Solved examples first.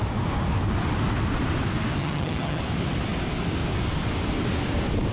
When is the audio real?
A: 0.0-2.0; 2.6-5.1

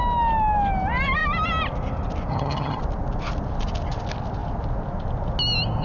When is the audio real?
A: 0.0-2.3; 2.8-5.8

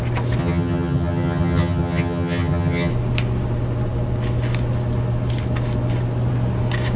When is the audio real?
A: 0.0-0.4; 2.9-7.0

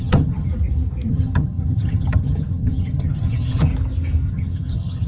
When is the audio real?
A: 0.5-1.1; 3.7-4.3